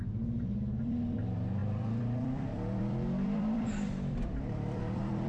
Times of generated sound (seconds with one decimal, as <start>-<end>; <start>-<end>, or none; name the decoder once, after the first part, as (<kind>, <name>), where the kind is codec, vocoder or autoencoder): 0.0-5.3 (vocoder, BigVGAN v2)